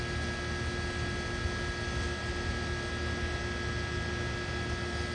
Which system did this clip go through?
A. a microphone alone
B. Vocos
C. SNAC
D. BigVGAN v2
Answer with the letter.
A